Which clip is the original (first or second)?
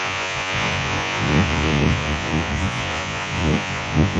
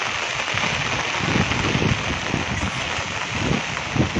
second